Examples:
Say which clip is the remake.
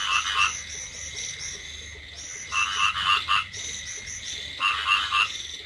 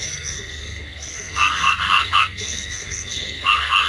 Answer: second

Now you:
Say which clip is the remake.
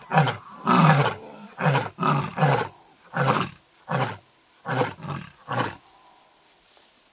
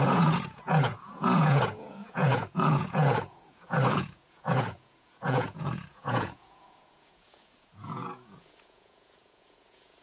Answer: second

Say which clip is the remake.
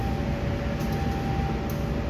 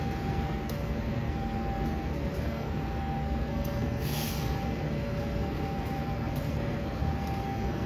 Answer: second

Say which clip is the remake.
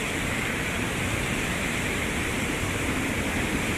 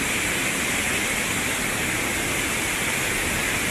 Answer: first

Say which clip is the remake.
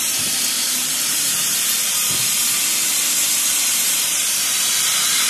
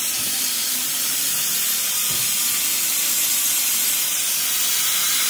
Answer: first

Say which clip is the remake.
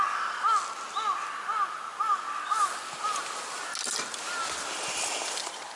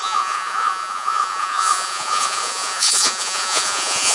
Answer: second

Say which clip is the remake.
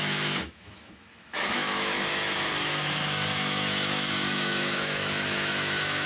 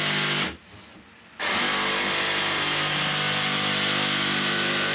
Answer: first